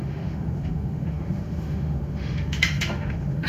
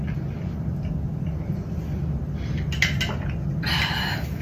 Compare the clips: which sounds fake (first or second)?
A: first